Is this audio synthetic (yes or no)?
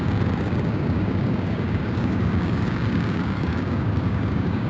yes